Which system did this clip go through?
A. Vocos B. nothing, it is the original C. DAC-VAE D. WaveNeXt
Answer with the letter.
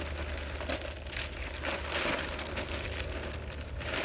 B